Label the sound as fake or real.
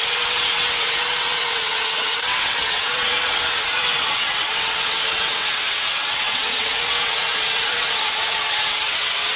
fake